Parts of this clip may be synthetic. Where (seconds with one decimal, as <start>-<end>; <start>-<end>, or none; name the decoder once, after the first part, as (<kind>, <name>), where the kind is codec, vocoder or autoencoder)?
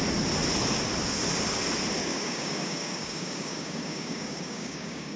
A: 2.0-5.2 (codec, DAC)